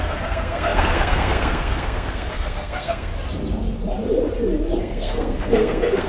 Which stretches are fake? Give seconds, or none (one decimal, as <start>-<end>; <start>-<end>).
0.0-3.1; 4.8-6.1